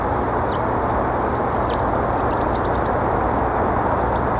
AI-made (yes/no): no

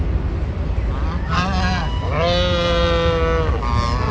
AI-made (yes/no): no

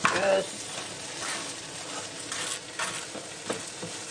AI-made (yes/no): no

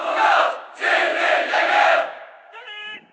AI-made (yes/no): yes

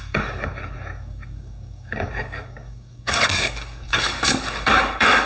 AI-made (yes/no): yes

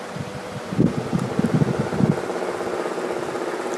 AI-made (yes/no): no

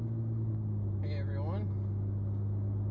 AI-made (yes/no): no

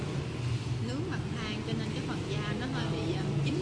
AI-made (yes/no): no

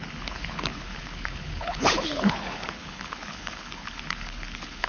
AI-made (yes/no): yes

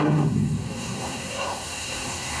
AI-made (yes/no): yes